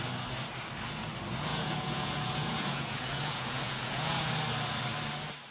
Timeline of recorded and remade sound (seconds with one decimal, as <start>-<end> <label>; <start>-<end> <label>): 0.0-1.5 recorded; 1.5-4.3 remade; 4.3-5.5 recorded

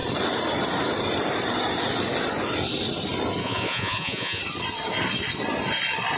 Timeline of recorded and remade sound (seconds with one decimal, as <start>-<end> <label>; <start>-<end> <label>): 0.0-3.4 recorded; 3.4-4.4 remade; 4.4-6.2 recorded

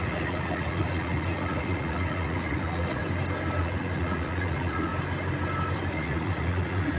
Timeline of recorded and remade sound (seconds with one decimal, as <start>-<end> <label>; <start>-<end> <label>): 0.0-3.0 remade; 3.0-3.6 recorded; 3.6-4.9 remade; 4.9-5.9 recorded; 5.9-7.0 remade

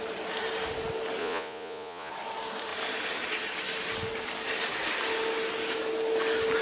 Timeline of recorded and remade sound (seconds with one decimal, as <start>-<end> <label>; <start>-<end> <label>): 0.0-1.2 recorded; 1.2-2.1 remade; 2.1-6.6 recorded

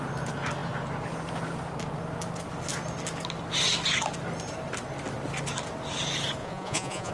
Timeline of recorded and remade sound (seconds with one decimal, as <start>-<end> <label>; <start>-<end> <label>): 0.0-6.4 recorded; 6.4-7.1 remade

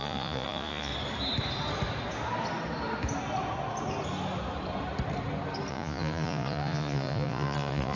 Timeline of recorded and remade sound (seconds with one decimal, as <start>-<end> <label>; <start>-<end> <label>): 0.0-0.9 remade; 0.9-5.7 recorded; 5.7-8.0 remade